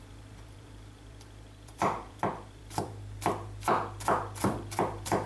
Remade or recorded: remade